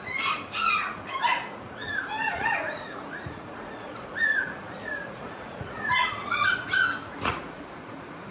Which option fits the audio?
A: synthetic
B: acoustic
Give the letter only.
A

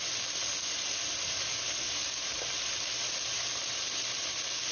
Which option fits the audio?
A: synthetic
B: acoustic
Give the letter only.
B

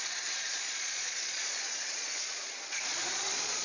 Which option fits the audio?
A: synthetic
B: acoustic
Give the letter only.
A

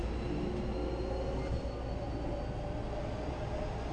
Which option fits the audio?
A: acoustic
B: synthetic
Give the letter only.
A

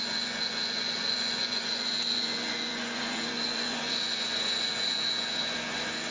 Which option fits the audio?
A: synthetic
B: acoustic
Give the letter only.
A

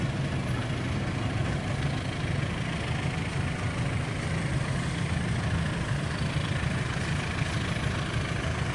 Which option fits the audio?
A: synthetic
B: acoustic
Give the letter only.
B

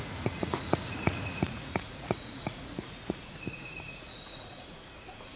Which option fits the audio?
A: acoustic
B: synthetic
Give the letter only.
B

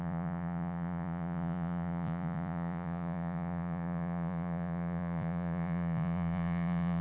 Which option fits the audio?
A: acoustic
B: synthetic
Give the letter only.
B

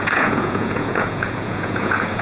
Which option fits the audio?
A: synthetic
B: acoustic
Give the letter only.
A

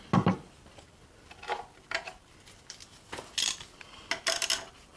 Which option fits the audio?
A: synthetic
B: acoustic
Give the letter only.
B